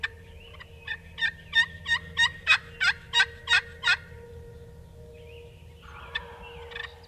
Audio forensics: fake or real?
real